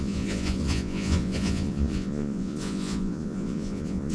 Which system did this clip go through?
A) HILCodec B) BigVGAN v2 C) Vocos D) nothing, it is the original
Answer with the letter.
C